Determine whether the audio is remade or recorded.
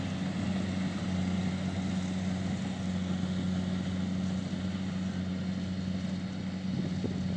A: recorded